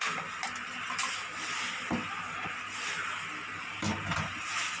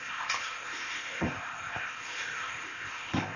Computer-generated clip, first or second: second